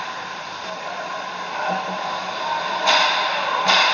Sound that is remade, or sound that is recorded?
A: remade